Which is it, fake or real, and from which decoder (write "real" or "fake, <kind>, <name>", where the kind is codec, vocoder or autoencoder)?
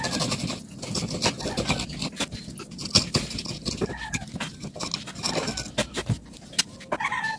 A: real